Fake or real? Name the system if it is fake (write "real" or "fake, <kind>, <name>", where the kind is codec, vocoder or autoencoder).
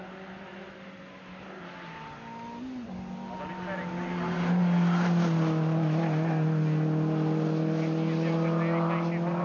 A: real